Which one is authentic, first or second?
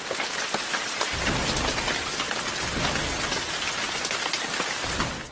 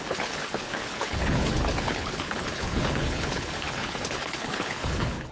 first